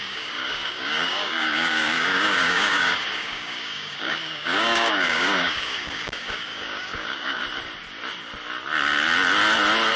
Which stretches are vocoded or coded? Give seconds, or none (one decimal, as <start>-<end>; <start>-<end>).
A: 0.0-7.4